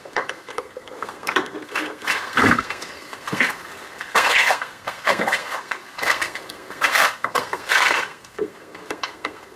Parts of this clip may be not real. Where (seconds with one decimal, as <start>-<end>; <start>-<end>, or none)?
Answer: 0.0-9.6